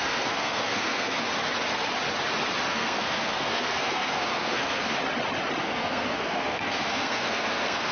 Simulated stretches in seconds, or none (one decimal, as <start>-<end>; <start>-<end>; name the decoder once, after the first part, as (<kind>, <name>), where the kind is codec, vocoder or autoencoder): 0.0-1.2 (codec, SNAC); 2.7-4.8; 5.6-7.9